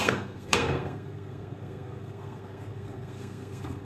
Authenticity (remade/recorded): remade